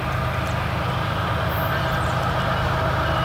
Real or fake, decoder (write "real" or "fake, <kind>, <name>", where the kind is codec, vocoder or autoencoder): real